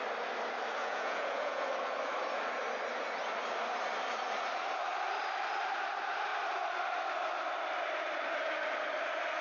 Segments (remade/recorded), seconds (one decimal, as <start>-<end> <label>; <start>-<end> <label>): 0.0-0.8 recorded; 0.8-1.7 remade; 1.7-9.4 recorded